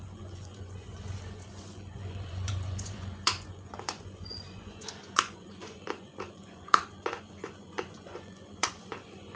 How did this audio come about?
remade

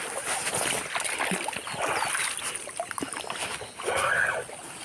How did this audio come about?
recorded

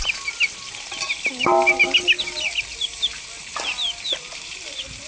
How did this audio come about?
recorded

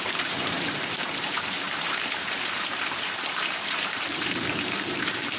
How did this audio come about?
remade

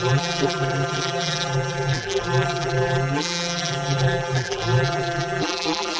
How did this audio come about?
remade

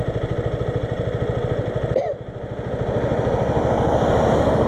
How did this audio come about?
recorded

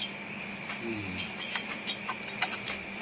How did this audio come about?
recorded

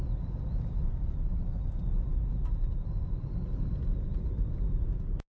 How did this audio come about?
recorded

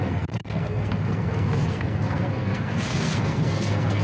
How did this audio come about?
remade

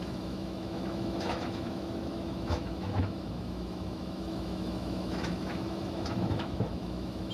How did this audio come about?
remade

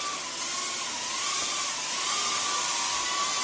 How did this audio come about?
recorded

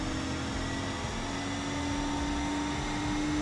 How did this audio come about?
recorded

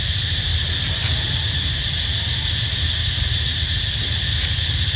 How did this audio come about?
recorded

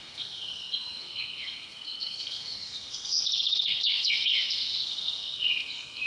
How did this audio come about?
remade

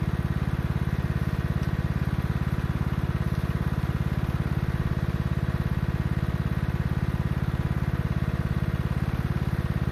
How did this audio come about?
recorded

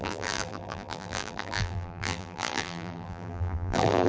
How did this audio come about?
remade